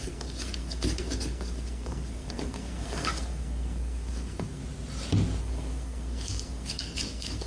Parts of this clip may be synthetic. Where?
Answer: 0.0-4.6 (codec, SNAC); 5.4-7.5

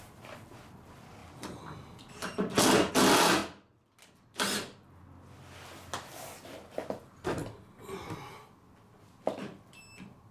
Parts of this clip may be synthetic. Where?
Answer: none

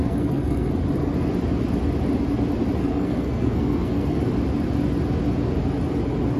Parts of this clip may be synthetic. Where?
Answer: 0.0-0.7 (codec, SNAC); 2.8-4.2

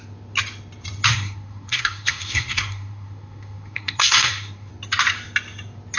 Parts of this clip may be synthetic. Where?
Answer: 1.1-4.7 (codec, SNAC)

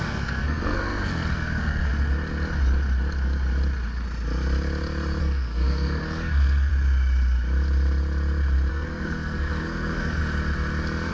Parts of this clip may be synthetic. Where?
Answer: 0.0-1.9 (codec, SNAC); 5.2-6.7; 8.7-10.2

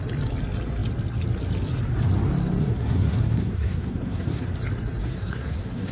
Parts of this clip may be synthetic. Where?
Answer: 2.6-4.5 (codec, SNAC); 5.0-5.9

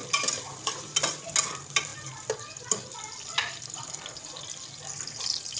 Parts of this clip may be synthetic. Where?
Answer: none

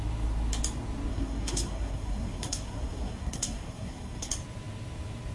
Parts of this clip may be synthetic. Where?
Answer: 1.1-4.3 (codec, SNAC)